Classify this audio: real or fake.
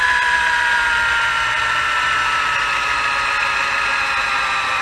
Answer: real